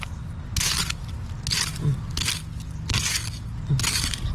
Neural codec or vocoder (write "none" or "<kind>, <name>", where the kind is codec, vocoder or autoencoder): none